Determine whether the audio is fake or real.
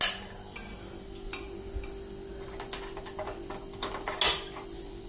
real